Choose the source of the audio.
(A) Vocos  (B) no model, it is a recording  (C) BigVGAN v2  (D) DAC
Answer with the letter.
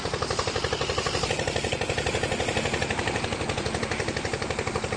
B